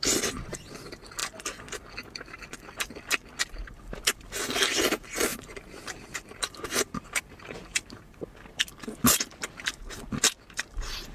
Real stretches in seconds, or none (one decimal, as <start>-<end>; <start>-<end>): 0.0-5.3; 8.2-11.1